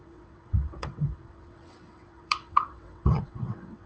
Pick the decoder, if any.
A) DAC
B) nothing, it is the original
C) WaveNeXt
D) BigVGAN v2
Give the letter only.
C